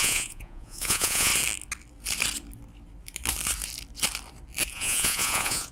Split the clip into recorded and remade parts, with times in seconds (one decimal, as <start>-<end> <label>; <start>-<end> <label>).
0.0-1.3 remade; 1.3-4.7 recorded; 4.7-5.7 remade